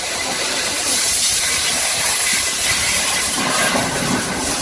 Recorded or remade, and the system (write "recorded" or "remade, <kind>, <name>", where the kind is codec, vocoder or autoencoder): remade, vocoder, BigVGAN v2